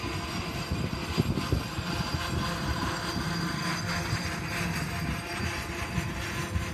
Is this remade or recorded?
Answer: recorded